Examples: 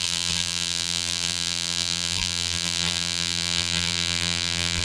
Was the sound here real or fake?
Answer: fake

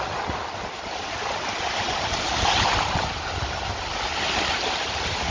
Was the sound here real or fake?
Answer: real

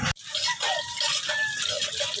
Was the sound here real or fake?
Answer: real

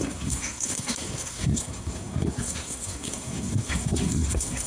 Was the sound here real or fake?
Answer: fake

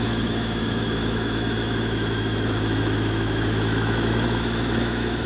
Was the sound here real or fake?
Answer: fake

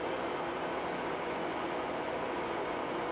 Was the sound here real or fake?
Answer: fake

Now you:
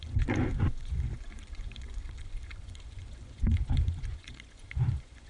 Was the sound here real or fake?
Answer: fake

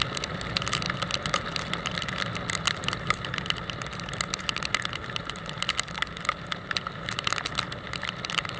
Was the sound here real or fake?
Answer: real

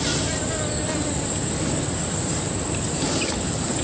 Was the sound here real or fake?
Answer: real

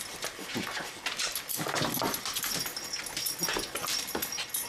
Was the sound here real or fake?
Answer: real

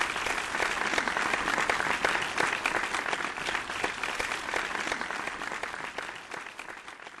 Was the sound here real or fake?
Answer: real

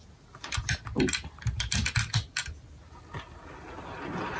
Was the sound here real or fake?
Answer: real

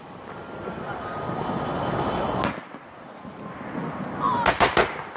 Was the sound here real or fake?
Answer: real